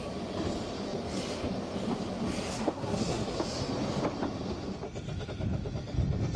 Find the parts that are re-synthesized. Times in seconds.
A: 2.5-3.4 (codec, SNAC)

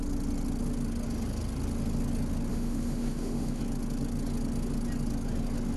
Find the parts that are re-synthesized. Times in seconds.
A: 2.5-3.6 (autoencoder, DAC-VAE)

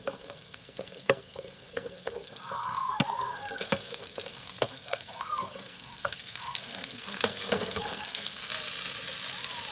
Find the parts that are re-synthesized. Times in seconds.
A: 0.0-8.5 (codec, SNAC)

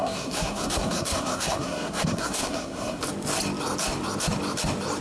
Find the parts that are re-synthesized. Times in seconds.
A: 0.0-3.0 (codec, SNAC)

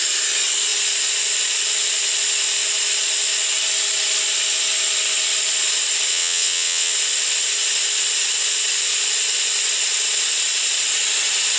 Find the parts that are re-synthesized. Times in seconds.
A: 6.1-6.9 (vocoder, WaveNeXt)